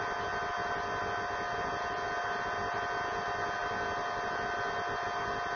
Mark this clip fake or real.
real